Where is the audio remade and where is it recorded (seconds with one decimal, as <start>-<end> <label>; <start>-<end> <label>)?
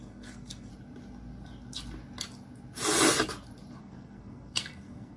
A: 0.0-0.7 remade; 0.7-3.8 recorded; 3.8-5.2 remade